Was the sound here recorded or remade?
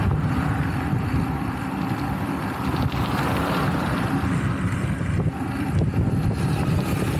recorded